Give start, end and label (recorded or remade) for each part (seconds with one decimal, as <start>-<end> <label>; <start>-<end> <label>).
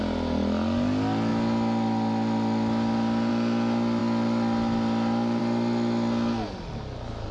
0.0-7.3 recorded